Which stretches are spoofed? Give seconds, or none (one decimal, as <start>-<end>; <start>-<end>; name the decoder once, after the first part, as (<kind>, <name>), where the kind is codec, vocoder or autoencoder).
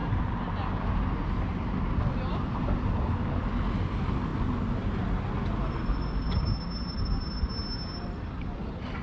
none